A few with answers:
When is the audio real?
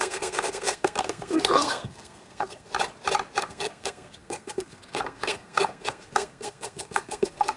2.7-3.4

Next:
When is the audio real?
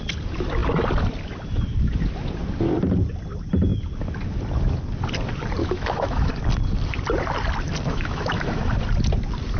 0.0-5.6; 6.3-7.9; 8.7-9.6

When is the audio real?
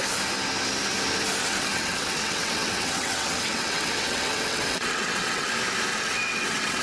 0.0-1.4; 5.5-5.9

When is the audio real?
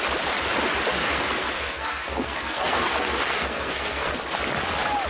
0.0-1.0; 4.1-5.1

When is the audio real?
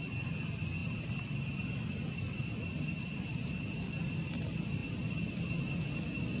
0.0-6.4